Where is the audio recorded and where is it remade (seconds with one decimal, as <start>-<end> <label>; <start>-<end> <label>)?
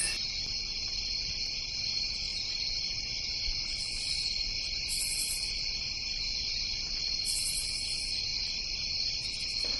0.0-2.3 recorded; 2.3-7.2 remade; 7.2-8.3 recorded; 8.3-9.4 remade; 9.4-9.8 recorded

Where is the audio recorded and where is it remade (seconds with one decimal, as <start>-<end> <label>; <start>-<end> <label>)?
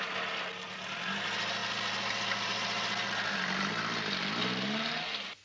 0.0-5.4 recorded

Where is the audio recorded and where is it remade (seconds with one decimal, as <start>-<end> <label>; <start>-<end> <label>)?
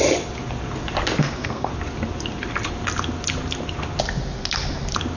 0.0-1.2 recorded; 1.2-1.7 remade; 1.7-5.2 recorded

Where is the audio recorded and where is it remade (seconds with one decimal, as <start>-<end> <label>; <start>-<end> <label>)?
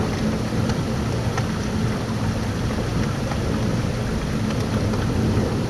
0.0-5.7 recorded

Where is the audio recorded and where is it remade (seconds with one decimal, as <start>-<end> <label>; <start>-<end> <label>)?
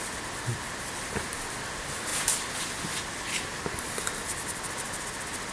0.0-5.5 recorded